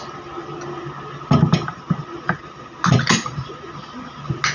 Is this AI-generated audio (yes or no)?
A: no